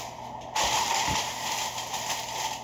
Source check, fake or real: real